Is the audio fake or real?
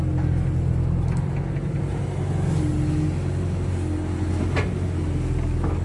real